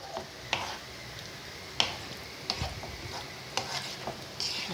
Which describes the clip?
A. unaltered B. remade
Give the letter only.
A